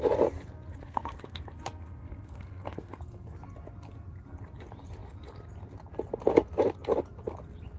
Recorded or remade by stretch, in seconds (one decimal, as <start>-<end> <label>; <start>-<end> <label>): 0.0-0.7 recorded; 0.7-3.0 remade; 3.0-7.8 recorded